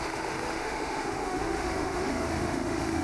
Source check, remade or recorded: remade